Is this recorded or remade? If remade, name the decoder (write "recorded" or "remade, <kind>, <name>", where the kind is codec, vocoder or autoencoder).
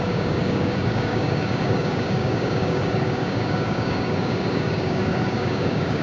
remade, codec, DAC